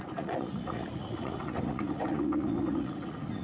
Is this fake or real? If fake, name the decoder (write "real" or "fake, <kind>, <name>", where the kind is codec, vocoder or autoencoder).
fake, vocoder, Vocos